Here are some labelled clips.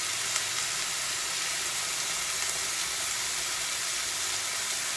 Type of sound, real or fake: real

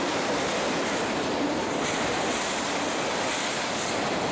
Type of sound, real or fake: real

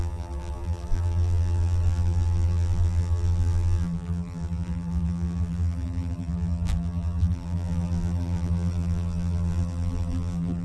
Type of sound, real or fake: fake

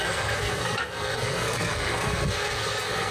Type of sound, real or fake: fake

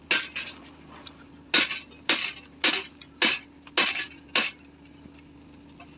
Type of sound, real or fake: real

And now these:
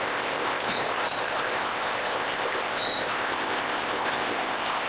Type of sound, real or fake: fake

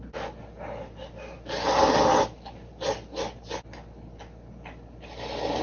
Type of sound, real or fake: real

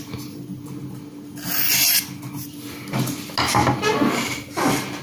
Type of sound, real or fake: real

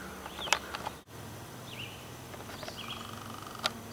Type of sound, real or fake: real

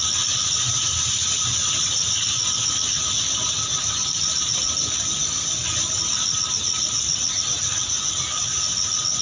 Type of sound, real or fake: real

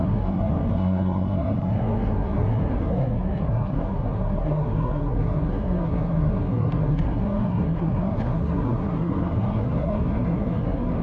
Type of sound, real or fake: fake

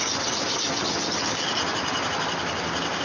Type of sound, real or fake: real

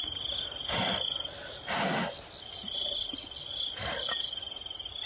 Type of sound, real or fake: real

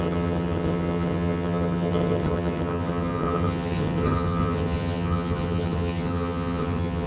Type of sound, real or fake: fake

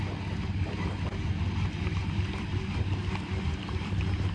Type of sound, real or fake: real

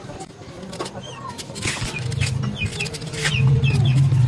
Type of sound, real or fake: real